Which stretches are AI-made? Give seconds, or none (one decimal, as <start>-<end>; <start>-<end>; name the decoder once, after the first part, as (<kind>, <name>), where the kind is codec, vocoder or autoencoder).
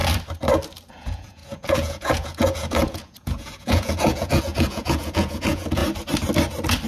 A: 0.9-5.8 (vocoder, Vocos)